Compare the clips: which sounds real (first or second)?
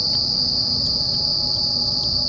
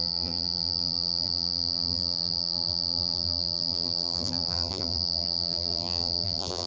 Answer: first